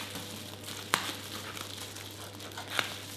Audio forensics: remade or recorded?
recorded